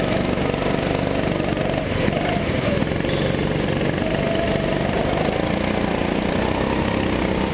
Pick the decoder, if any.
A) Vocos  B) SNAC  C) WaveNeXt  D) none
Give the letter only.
D